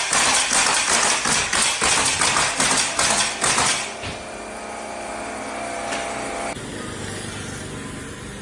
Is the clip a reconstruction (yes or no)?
no